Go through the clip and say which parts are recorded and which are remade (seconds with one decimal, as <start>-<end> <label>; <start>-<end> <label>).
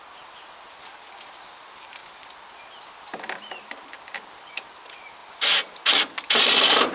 0.0-6.9 recorded